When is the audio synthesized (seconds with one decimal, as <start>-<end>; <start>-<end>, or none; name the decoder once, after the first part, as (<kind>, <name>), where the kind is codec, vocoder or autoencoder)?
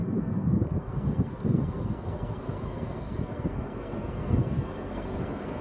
0.0-5.6 (codec, SNAC)